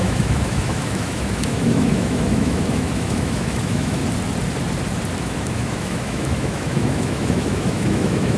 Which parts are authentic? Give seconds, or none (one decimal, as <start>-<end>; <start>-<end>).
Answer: 4.0-5.2